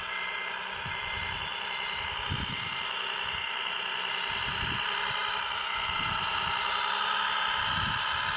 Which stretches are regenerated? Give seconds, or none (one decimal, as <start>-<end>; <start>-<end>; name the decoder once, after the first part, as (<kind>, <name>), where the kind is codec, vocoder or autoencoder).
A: none